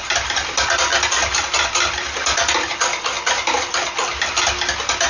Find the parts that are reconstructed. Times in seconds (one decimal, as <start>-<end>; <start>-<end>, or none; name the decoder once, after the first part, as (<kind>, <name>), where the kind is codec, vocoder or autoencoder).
none